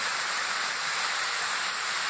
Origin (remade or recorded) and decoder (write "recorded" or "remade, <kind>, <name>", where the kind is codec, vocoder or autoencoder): remade, vocoder, BigVGAN v2